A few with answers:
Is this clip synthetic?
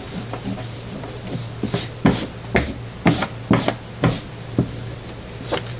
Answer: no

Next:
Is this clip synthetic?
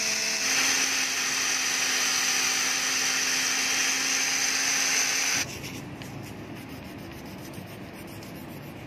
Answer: no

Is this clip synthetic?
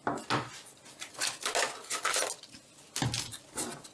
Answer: no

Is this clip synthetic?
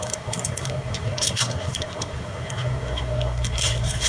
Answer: yes